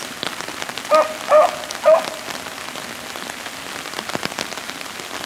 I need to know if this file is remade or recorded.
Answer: recorded